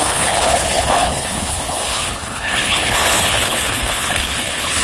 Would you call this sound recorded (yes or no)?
no